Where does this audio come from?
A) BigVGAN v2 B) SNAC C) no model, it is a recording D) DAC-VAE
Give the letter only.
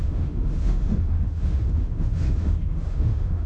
D